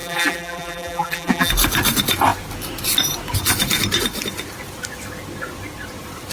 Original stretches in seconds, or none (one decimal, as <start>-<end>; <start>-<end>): 1.5-6.3